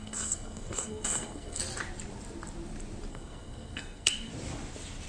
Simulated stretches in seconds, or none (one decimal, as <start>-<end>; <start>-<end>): 0.0-1.6; 3.1-4.3